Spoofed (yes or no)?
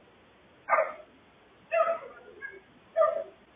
no